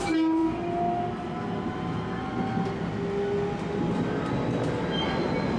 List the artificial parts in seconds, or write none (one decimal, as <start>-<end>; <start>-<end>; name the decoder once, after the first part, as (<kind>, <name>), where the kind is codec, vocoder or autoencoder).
none